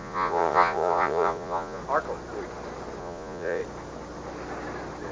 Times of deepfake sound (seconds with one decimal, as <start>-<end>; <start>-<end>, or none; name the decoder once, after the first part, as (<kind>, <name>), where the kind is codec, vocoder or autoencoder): 0.0-1.8 (vocoder, Vocos); 3.0-3.6